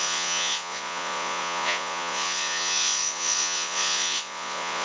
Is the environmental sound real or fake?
fake